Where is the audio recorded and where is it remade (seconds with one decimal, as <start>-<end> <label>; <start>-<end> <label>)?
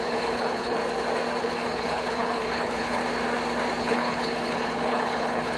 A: 0.0-0.8 remade; 0.8-1.4 recorded; 1.4-3.0 remade; 3.0-3.8 recorded; 3.8-5.6 remade